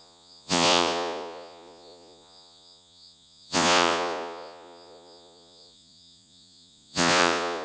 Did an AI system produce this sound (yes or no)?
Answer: yes